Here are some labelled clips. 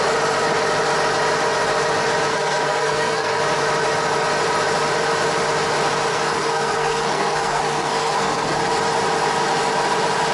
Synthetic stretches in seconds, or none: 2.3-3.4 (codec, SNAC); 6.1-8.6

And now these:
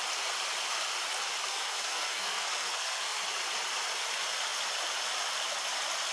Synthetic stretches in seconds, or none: 1.5-3.2 (codec, SNAC)

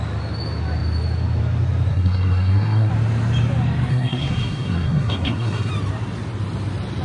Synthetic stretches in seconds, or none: 1.9-2.9 (codec, SNAC); 3.9-5.7

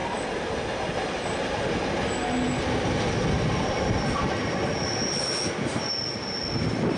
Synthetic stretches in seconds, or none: none

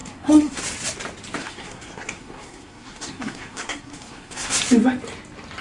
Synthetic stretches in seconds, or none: 0.0-0.6 (codec, SNAC); 1.4-4.6

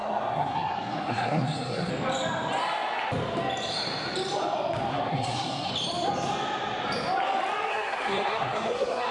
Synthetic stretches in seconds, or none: 0.0-1.9 (codec, SNAC); 4.9-5.7; 7.7-9.1